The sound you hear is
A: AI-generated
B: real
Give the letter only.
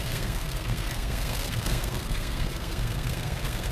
A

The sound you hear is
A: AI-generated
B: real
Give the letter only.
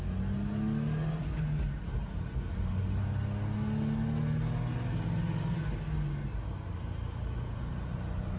B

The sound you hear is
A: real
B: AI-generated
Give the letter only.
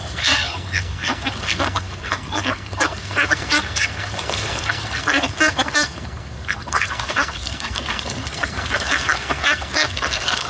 B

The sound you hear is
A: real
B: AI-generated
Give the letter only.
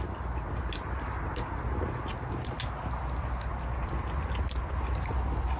A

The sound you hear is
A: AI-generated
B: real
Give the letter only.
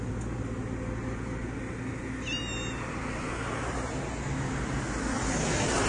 B